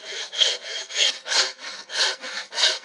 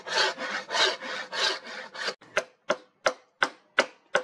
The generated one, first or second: first